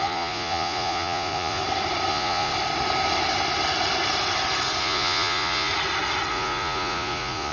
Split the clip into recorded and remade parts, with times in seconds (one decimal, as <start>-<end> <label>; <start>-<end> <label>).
0.0-1.6 remade; 1.6-2.1 recorded; 2.1-2.5 remade; 2.5-4.8 recorded; 4.8-5.7 remade; 5.7-6.3 recorded; 6.3-7.5 remade

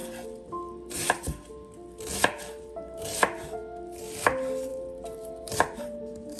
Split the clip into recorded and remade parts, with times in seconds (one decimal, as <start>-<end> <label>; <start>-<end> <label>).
0.0-1.5 remade; 1.5-2.1 recorded; 2.1-3.6 remade; 3.6-4.7 recorded; 4.7-6.4 remade

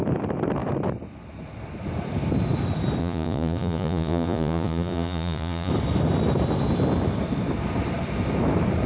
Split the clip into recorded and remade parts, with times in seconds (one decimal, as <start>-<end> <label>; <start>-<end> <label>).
0.0-3.0 recorded; 3.0-5.7 remade; 5.7-8.9 recorded

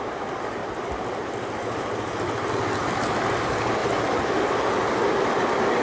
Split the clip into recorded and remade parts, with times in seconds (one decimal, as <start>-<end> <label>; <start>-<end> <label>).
0.0-3.8 recorded; 3.8-4.5 remade; 4.5-5.8 recorded

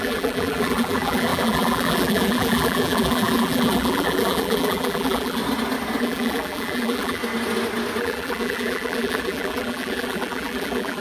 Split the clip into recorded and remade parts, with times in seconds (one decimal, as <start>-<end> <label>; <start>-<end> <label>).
0.0-5.4 remade; 5.4-6.0 recorded; 6.0-7.2 remade; 7.2-8.0 recorded; 8.0-11.0 remade